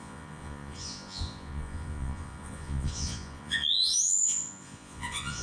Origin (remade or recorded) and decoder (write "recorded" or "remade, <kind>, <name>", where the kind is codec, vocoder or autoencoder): remade, vocoder, Vocos